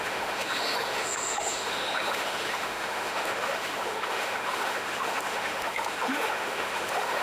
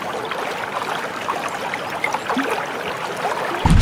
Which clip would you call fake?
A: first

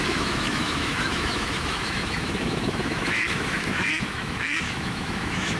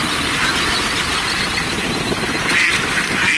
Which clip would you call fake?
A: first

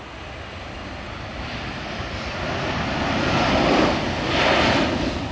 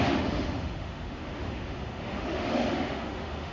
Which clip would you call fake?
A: second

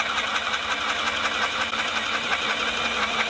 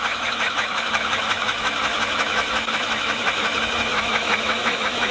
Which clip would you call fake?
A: second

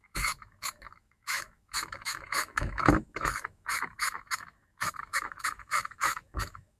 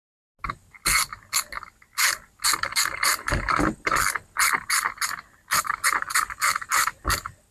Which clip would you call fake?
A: first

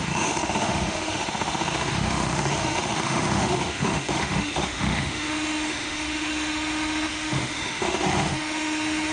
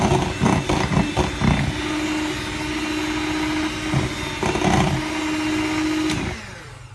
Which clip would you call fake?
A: first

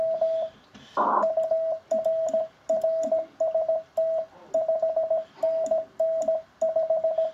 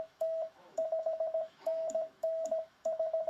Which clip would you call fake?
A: second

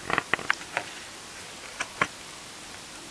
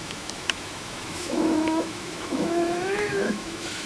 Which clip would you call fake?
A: second